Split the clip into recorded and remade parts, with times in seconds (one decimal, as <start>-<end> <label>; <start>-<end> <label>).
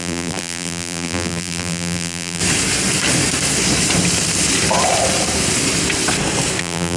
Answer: 0.0-2.4 remade; 2.4-6.6 recorded; 6.6-7.0 remade